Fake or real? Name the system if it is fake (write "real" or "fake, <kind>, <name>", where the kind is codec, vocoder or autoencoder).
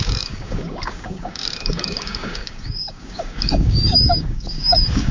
fake, codec, DAC